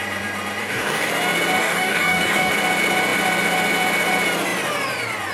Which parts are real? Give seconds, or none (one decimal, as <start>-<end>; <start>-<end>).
0.0-0.6; 1.1-1.6; 2.5-5.3